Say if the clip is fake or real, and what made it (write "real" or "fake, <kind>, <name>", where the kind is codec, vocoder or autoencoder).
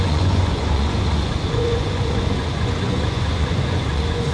fake, vocoder, Vocos